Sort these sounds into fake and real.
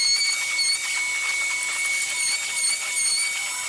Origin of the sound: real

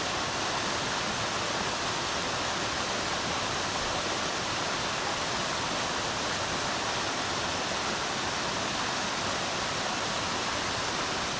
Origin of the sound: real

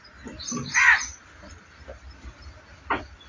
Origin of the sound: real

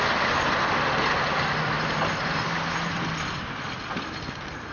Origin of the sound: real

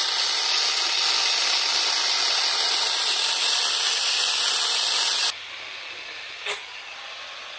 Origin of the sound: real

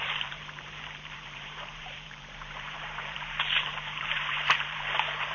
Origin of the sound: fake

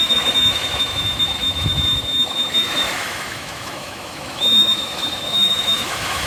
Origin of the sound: fake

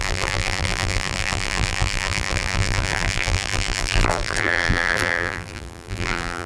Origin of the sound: fake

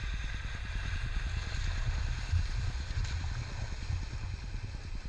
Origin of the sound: real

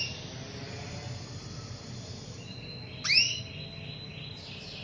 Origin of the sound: real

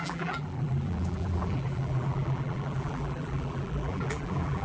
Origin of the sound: fake